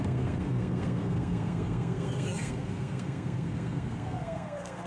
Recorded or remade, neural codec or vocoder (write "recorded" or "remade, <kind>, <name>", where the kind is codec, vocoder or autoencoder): remade, codec, SNAC